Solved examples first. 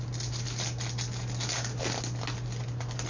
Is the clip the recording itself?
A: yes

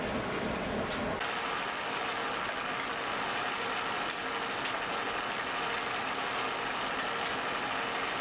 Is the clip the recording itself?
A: yes